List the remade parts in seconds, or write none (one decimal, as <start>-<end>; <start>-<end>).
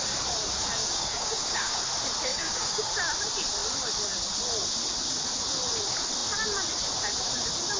0.8-1.8; 2.3-2.9